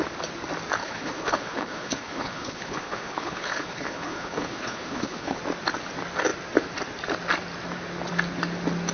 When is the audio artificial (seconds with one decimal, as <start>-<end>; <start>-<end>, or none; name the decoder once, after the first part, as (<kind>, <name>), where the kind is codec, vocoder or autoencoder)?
0.8-5.4 (codec, HILCodec)